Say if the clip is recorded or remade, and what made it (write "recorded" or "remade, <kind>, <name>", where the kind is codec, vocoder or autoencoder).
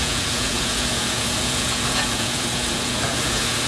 remade, vocoder, Vocos